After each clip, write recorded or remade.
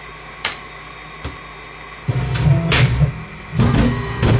recorded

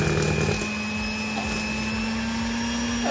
recorded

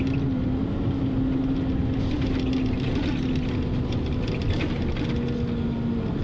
recorded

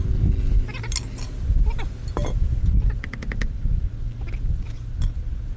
recorded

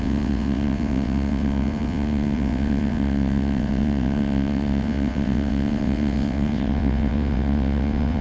remade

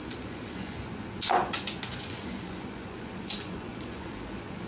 remade